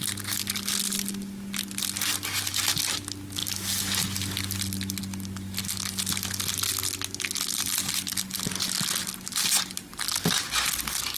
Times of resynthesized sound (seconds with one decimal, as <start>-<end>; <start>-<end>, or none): none